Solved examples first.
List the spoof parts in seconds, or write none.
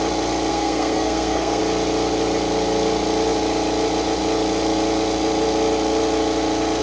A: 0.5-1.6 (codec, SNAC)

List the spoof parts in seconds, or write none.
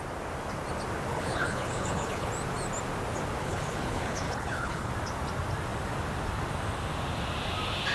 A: 1.1-2.3 (codec, HILCodec); 3.4-4.9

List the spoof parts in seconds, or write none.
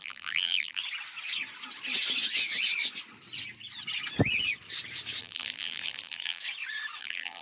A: 0.0-0.8 (vocoder, BigVGAN v2); 5.2-6.4; 7.0-7.4